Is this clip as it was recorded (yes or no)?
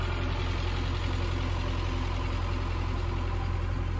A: yes